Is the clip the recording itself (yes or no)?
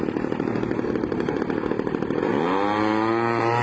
yes